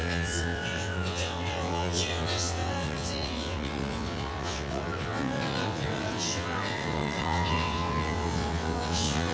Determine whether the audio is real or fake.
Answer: fake